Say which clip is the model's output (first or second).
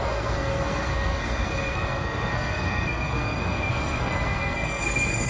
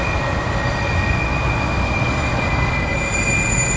first